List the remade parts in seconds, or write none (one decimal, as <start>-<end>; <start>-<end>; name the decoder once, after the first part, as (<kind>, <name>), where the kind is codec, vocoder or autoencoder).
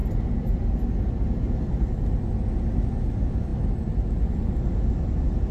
none